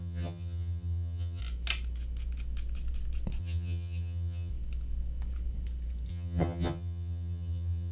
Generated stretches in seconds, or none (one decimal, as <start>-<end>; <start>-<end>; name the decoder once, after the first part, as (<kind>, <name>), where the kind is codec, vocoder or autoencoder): 0.0-1.4 (vocoder, HiFi-GAN); 3.4-4.5; 6.1-7.9